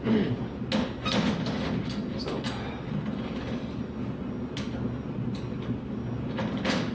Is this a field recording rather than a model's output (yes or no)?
yes